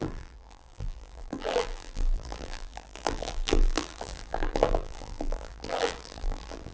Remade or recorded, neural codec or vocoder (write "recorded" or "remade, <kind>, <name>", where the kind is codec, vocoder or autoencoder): remade, vocoder, BigVGAN v2